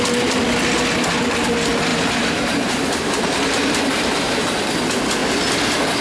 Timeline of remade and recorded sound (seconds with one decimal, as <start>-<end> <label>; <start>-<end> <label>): 0.0-1.9 recorded; 1.9-4.4 remade; 4.4-6.0 recorded